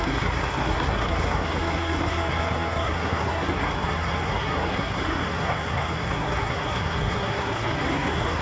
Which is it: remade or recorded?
remade